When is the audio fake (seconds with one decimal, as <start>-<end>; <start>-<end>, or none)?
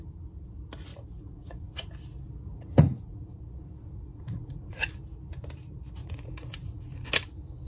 0.9-1.9; 2.5-3.4; 4.1-4.9; 6.0-7.1